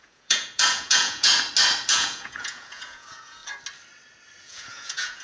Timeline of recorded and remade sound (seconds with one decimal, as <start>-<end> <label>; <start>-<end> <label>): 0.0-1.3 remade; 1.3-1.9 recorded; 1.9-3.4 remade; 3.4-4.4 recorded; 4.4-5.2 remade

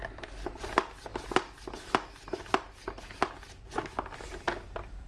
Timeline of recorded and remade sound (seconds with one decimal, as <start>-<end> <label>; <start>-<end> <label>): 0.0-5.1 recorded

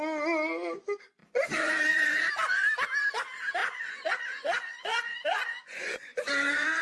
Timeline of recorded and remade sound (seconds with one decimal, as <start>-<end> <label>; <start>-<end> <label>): 0.0-1.2 recorded; 1.2-2.3 remade; 2.3-3.6 recorded; 3.6-6.8 remade

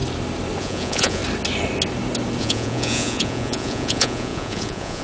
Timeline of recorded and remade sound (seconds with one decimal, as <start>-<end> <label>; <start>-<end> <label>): 0.0-0.6 recorded; 0.6-1.2 remade; 1.2-2.4 recorded; 2.4-5.0 remade

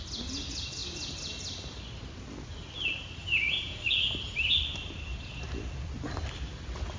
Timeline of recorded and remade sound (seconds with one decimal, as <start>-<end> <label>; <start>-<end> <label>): 0.0-3.2 recorded; 3.2-3.8 remade; 3.8-7.0 recorded